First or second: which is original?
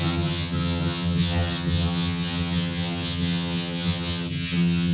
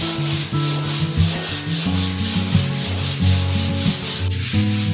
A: second